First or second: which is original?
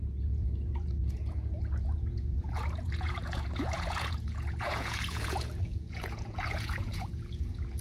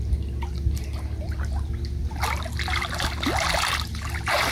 second